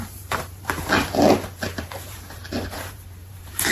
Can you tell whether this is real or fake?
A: fake